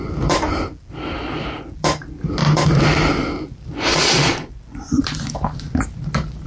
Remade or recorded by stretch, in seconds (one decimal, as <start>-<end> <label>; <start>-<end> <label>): 0.0-3.9 recorded; 3.9-4.6 remade; 4.6-6.5 recorded